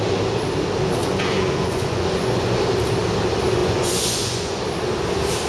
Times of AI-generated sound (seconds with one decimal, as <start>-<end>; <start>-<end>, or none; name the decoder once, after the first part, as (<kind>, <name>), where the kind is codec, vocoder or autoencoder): 1.0-2.6 (vocoder, Vocos); 3.6-4.6